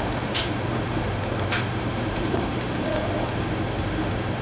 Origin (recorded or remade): remade